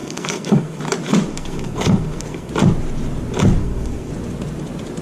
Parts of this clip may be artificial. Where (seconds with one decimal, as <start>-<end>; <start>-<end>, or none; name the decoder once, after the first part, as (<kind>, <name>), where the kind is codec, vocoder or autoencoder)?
0.0-0.8 (codec, SNAC); 1.3-2.5; 3.6-4.1